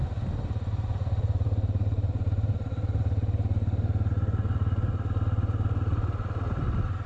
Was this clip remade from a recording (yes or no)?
no